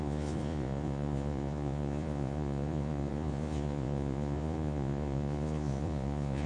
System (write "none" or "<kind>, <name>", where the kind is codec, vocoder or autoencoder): vocoder, Vocos